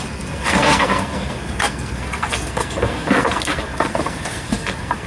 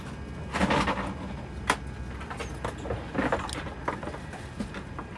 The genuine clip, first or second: second